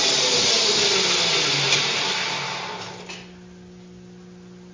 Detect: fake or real real